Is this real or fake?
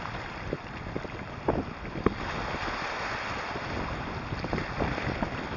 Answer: real